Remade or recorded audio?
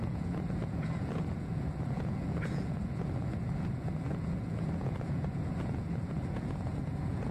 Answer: remade